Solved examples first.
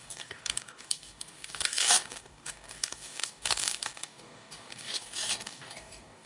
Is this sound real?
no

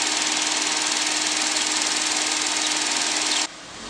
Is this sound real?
yes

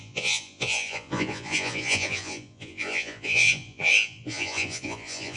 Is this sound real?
no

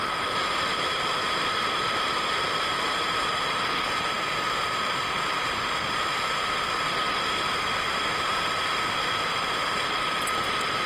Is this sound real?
no